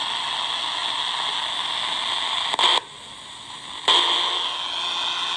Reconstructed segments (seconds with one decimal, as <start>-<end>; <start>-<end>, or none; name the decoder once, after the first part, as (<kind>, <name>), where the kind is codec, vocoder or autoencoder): none